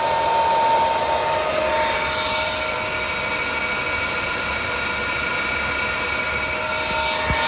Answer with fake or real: real